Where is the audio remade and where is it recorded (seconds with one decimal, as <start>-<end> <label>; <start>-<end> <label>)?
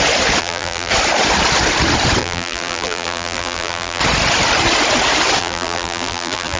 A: 0.0-0.4 recorded; 0.4-0.9 remade; 0.9-2.2 recorded; 2.2-4.0 remade; 4.0-5.4 recorded; 5.4-6.6 remade